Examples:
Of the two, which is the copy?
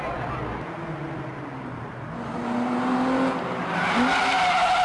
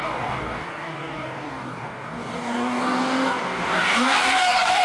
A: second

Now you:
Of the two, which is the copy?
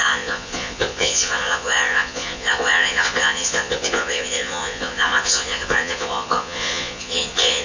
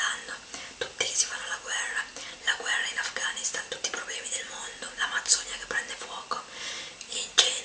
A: first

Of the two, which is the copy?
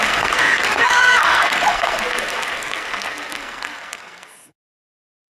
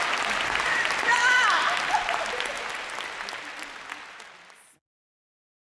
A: first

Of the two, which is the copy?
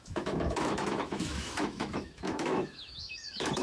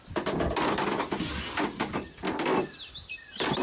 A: first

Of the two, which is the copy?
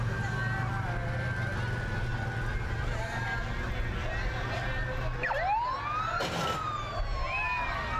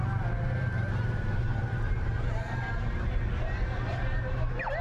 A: second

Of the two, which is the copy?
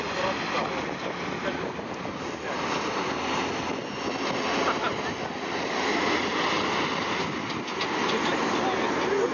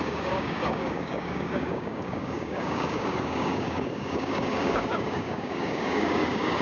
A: second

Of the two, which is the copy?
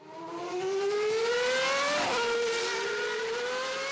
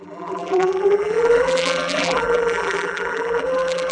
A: second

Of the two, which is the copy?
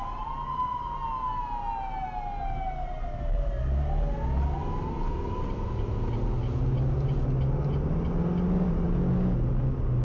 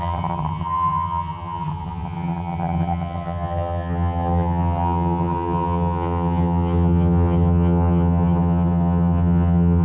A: second